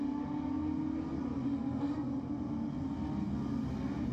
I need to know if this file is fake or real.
real